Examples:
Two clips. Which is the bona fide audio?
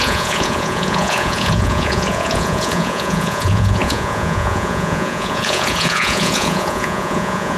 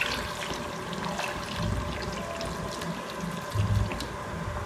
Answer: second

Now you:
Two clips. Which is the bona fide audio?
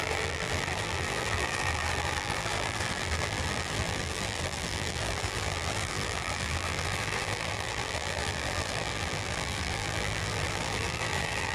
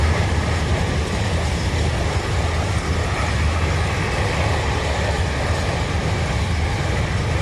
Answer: second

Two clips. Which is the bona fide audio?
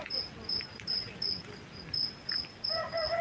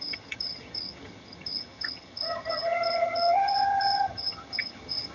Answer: first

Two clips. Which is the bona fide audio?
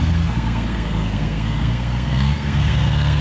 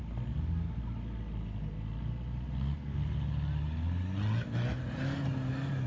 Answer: second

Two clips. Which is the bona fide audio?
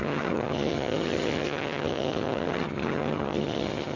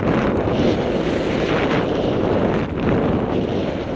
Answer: second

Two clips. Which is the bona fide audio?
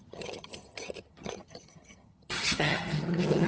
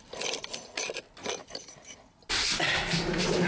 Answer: second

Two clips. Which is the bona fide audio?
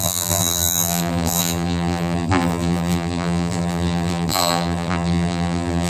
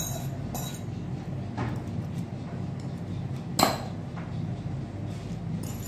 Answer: second